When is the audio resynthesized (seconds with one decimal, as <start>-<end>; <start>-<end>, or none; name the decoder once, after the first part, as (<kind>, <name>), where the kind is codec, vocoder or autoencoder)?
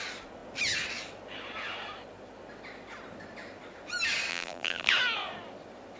4.3-4.9 (vocoder, BigVGAN v2)